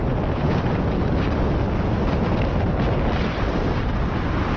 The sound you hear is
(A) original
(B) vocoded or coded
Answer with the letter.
A